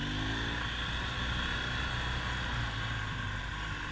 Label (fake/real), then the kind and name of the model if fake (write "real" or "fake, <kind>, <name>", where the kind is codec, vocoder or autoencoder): real